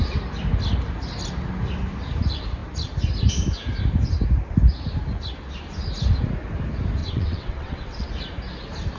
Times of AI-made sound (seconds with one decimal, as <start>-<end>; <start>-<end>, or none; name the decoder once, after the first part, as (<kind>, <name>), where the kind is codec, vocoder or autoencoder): 7.0-8.1 (vocoder, WaveNeXt)

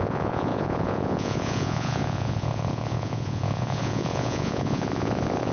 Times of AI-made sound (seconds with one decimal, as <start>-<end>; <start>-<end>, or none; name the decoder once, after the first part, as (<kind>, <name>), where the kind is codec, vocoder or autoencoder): 0.0-5.5 (vocoder, Vocos)

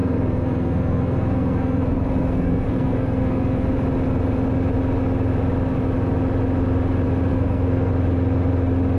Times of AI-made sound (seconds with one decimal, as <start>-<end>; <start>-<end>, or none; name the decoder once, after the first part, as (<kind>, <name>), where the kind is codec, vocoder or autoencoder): 0.0-3.7 (codec, SNAC); 7.3-7.9

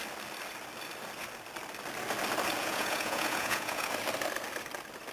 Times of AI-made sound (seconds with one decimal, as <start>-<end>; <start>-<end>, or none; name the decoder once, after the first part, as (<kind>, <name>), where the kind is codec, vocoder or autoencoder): 2.6-3.9 (vocoder, Vocos)